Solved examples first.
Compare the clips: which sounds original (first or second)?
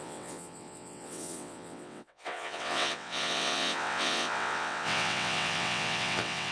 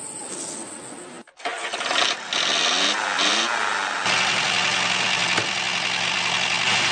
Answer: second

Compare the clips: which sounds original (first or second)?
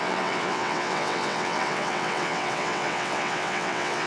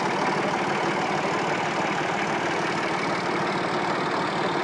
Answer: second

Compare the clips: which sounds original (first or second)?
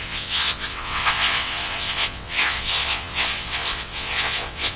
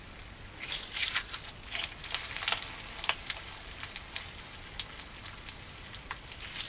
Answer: second